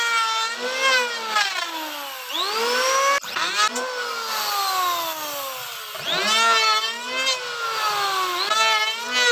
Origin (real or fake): real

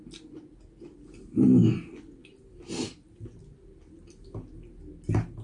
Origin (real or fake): real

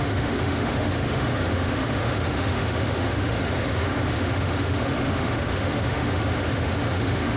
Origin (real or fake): fake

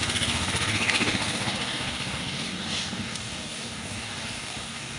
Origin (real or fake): fake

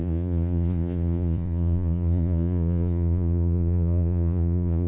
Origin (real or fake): fake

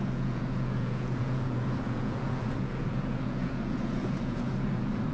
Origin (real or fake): fake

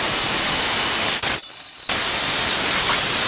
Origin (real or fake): real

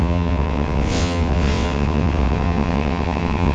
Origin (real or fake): fake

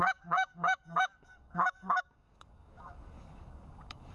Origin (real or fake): fake